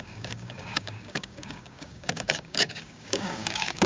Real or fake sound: fake